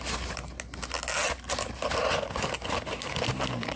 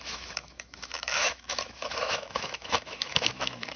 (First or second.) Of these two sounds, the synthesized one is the second